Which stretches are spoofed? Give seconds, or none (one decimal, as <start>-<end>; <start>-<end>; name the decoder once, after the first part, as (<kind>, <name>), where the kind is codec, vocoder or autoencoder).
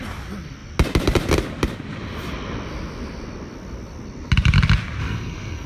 5.0-5.7 (codec, SNAC)